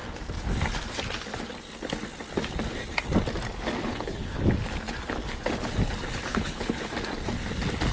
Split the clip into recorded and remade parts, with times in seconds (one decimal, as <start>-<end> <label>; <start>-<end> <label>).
0.0-3.8 recorded; 3.8-4.4 remade; 4.4-6.3 recorded; 6.3-6.9 remade; 6.9-7.9 recorded